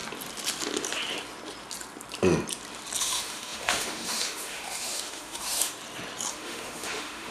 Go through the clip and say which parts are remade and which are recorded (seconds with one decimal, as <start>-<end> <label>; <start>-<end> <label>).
0.0-3.0 recorded; 3.0-5.7 remade; 5.7-6.3 recorded; 6.3-7.3 remade